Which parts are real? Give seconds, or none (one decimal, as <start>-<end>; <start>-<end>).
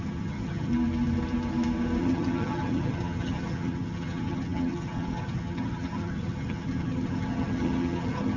0.7-2.0